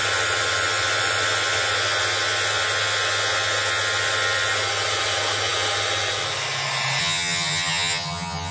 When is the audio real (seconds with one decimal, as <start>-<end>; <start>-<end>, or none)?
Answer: 0.0-7.0